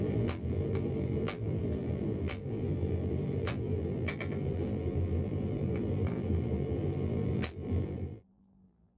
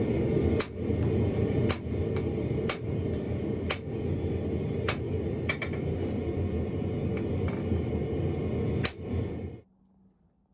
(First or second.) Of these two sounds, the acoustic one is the second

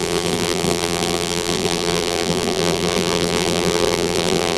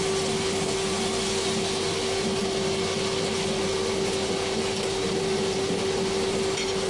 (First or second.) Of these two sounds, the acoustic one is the second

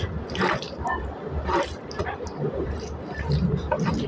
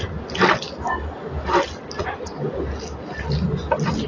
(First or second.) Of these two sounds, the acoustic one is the second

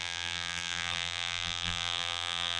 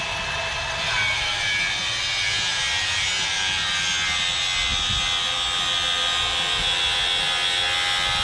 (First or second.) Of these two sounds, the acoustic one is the second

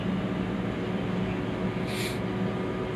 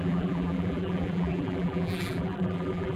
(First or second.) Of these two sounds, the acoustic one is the first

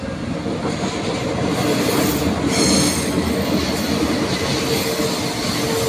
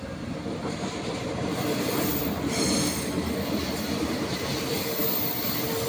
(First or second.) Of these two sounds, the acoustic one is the first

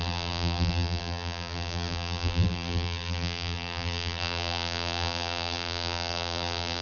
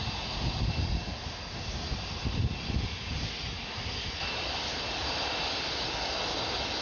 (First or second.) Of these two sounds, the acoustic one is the second